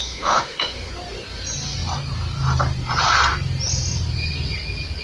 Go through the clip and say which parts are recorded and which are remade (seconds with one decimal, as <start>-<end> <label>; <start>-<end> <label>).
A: 0.0-0.9 remade; 0.9-5.0 recorded